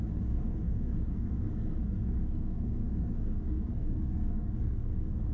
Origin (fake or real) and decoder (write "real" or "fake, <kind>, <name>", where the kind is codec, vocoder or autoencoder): fake, codec, SNAC